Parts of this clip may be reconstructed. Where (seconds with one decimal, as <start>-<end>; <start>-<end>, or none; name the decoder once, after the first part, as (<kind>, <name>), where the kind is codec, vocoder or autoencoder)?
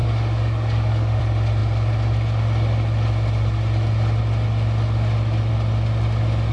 0.0-1.2 (codec, DAC)